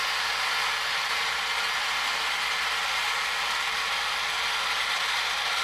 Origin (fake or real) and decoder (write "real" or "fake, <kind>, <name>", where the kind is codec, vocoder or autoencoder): real